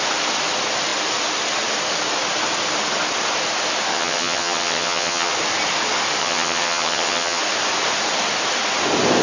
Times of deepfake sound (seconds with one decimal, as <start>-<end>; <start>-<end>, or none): 3.9-5.3; 6.2-7.4